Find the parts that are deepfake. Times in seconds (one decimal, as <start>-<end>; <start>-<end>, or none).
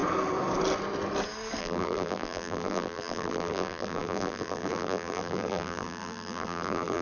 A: 1.6-7.0